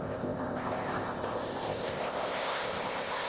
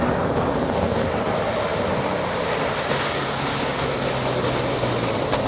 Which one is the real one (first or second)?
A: second